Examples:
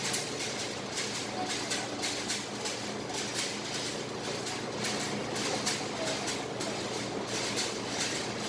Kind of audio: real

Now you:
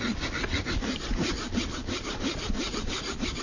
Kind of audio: real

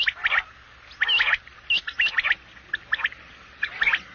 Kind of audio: real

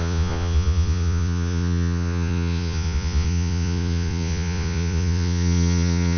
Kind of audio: fake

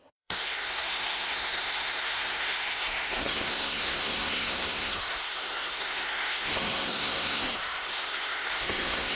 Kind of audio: fake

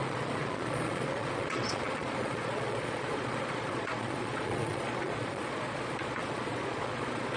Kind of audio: fake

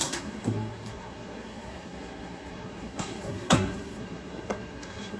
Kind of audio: fake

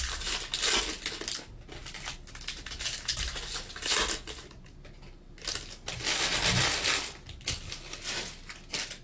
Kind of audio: real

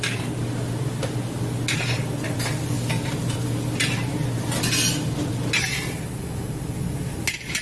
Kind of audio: real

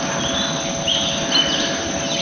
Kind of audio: real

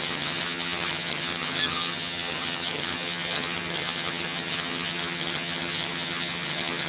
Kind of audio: fake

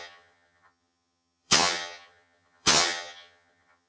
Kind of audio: fake